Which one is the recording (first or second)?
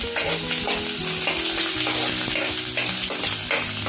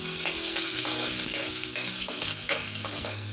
first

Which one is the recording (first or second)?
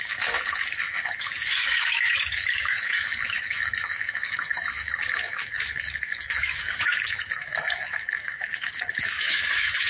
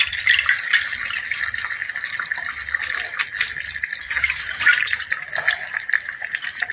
second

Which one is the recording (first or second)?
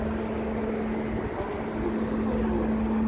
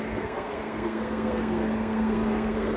first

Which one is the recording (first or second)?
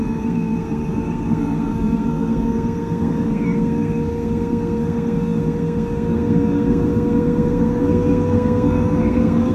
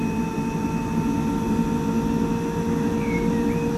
second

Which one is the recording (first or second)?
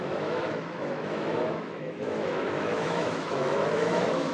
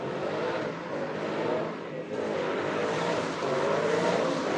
second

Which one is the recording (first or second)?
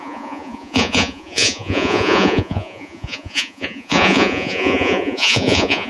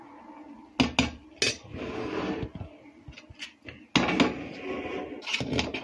second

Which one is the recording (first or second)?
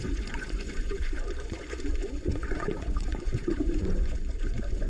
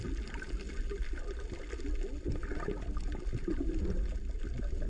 second